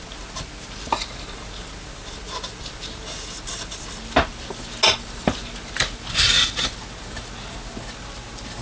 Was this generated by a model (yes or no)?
no